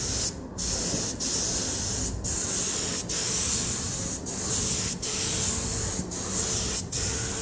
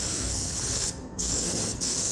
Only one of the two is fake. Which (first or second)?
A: second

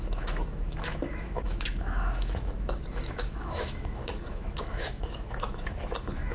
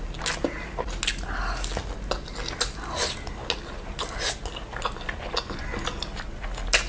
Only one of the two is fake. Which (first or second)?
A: first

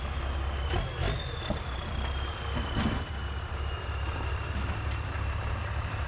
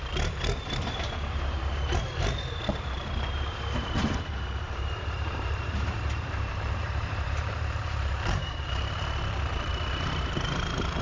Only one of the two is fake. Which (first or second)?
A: second